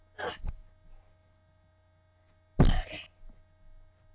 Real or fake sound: real